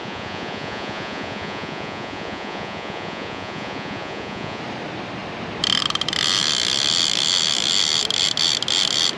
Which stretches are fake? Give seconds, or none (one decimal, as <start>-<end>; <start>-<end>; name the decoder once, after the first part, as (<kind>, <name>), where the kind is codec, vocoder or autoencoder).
0.0-4.6 (vocoder, Vocos)